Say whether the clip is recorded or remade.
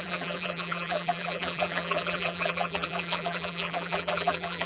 remade